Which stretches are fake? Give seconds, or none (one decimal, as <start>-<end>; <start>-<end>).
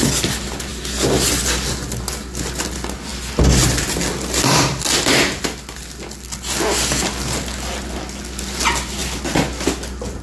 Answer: none